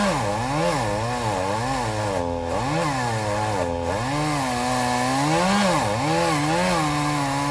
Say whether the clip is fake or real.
real